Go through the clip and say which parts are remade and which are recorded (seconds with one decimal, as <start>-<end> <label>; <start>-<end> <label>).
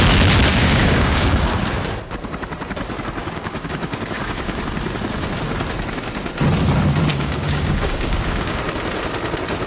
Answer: 0.0-0.5 recorded; 0.5-1.6 remade; 1.6-3.2 recorded; 3.2-4.6 remade; 4.6-7.1 recorded; 7.1-8.6 remade; 8.6-9.7 recorded